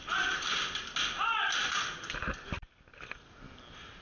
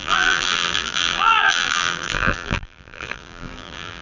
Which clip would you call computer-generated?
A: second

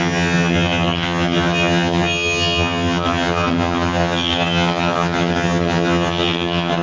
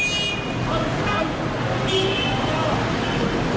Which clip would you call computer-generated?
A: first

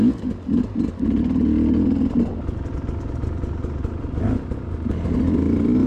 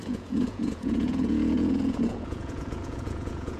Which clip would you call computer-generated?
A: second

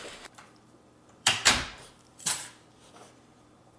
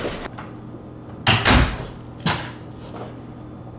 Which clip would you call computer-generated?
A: first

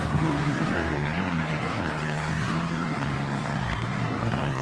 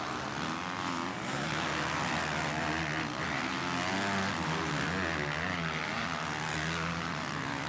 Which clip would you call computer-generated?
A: first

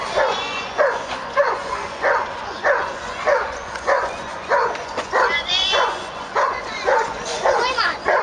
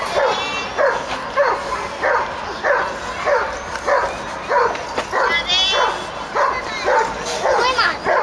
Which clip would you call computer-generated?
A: first